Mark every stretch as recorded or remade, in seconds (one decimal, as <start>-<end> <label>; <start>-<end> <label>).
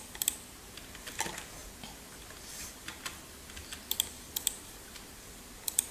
0.0-5.9 recorded